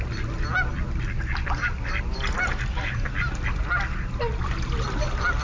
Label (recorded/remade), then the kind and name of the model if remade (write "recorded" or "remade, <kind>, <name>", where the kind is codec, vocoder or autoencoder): recorded